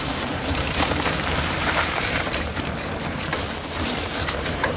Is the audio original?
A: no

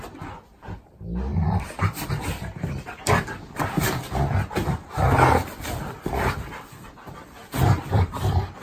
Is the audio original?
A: no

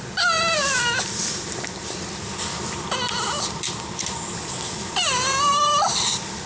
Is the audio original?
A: no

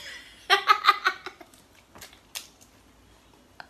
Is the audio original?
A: yes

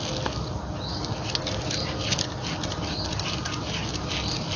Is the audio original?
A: yes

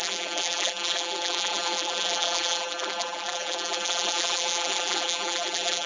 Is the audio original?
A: no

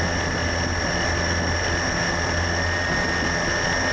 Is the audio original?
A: yes